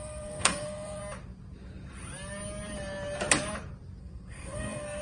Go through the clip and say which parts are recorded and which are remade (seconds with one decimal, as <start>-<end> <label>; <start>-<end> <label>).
0.0-1.0 remade; 1.0-4.0 recorded; 4.0-5.0 remade